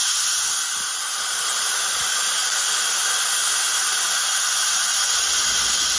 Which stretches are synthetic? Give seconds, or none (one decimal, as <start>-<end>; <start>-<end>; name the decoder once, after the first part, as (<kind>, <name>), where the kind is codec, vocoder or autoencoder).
0.0-0.5 (vocoder, BigVGAN v2)